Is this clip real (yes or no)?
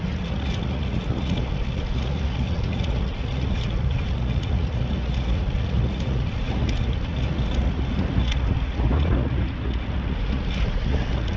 no